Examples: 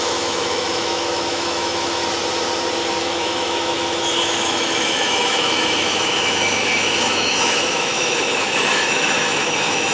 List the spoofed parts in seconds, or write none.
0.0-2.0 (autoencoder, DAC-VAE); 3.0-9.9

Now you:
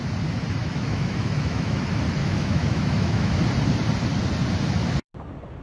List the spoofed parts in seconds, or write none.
0.6-1.8 (autoencoder, DAC-VAE); 2.2-3.4

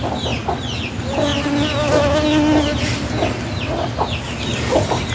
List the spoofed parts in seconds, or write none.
none

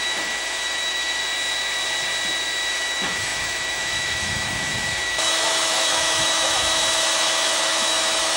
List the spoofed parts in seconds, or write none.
0.0-1.2 (autoencoder, DAC-VAE); 2.7-8.4